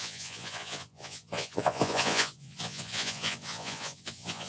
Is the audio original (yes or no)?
no